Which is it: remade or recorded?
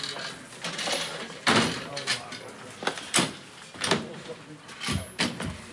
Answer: recorded